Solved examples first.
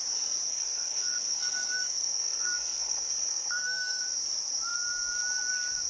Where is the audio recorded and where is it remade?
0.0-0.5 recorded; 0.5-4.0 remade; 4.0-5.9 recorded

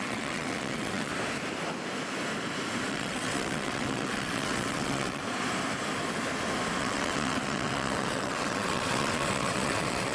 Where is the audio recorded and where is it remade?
0.0-1.1 remade; 1.1-2.9 recorded; 2.9-5.2 remade; 5.2-6.8 recorded; 6.8-10.1 remade